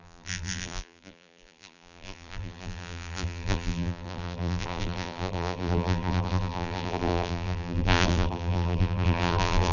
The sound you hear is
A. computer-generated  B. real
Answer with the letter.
A